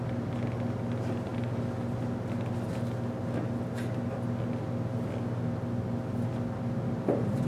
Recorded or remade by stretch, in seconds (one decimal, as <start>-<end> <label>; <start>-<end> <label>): 0.0-7.5 recorded